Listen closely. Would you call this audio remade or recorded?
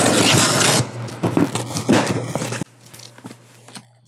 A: recorded